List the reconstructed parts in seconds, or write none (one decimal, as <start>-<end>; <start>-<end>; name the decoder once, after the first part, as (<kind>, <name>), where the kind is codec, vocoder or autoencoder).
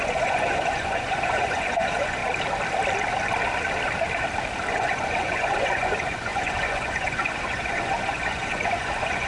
0.0-2.2 (vocoder, Vocos); 4.7-9.3